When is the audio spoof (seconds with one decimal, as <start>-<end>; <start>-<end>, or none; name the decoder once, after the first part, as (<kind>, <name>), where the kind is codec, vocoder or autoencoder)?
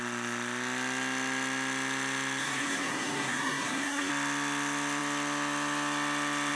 2.4-4.1 (codec, SNAC)